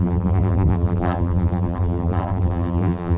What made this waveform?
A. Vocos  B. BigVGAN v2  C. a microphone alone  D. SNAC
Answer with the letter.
B